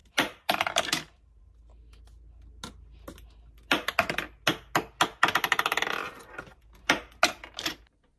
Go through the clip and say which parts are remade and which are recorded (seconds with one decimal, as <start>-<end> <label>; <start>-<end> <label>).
0.0-1.4 remade; 1.4-8.2 recorded